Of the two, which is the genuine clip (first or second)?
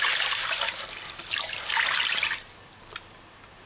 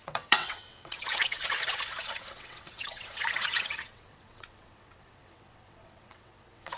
first